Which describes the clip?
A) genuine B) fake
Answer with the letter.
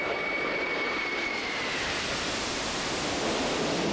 B